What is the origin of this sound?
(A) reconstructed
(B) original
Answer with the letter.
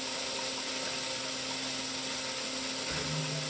B